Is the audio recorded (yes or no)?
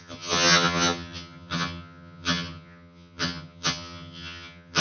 no